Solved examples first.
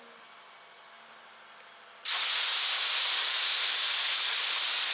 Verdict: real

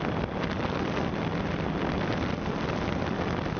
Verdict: real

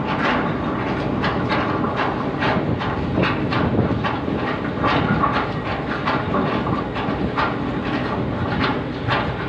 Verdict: real